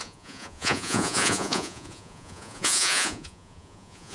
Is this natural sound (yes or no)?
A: no